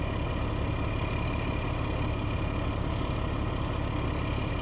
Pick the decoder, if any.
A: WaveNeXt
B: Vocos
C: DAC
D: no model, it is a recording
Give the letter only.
D